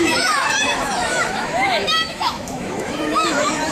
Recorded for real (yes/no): no